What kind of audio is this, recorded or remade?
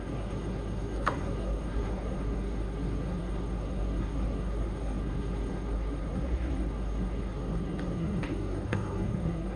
remade